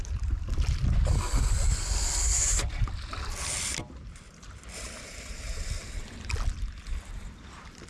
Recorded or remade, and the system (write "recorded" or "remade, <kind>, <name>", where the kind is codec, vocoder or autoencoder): recorded